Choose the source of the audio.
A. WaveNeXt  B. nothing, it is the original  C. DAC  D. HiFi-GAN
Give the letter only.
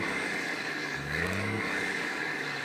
C